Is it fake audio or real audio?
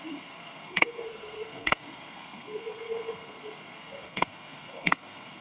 fake